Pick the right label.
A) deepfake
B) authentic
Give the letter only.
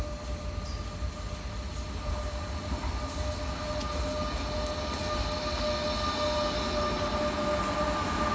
B